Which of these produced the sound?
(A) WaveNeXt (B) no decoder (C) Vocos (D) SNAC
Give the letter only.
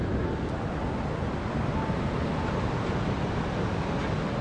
B